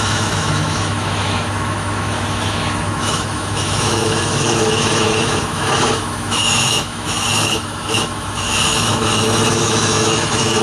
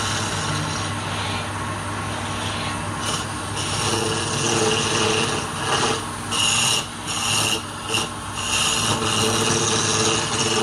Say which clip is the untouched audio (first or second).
second